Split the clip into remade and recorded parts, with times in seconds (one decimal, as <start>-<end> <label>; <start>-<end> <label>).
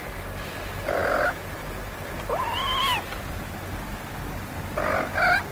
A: 0.0-5.5 recorded